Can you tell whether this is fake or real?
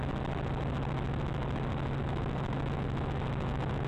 real